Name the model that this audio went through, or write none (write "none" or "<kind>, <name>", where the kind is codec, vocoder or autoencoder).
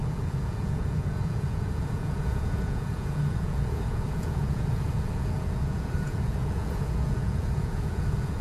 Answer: vocoder, Vocos